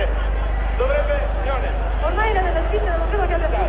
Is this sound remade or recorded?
recorded